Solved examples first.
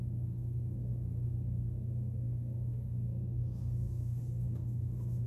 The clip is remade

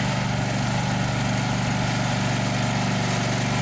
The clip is recorded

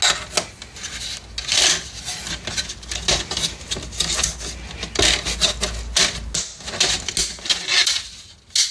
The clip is recorded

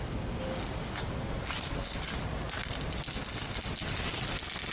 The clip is recorded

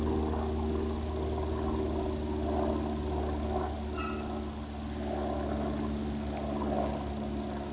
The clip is recorded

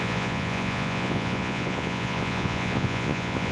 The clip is remade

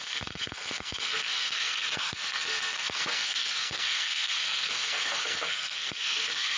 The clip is remade